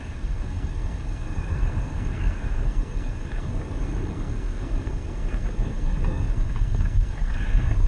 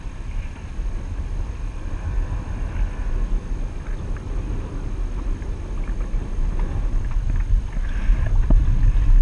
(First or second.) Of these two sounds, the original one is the second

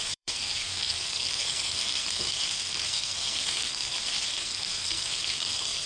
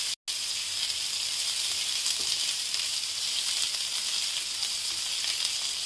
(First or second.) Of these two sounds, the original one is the second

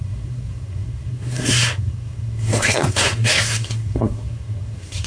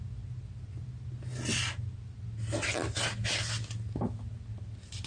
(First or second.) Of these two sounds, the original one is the second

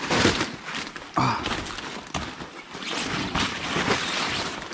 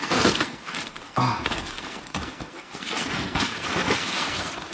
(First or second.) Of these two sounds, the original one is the first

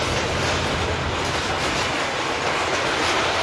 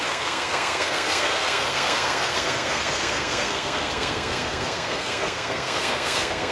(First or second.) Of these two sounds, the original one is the first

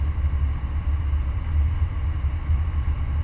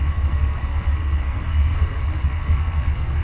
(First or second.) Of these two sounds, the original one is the first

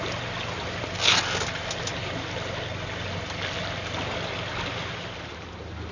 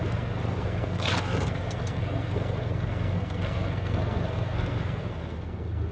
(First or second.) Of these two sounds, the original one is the first